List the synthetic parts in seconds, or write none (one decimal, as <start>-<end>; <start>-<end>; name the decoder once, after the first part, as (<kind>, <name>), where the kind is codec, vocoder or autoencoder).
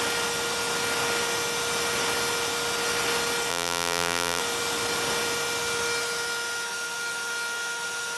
3.5-4.4 (vocoder, BigVGAN v2)